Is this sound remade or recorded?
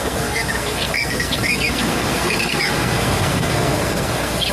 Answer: remade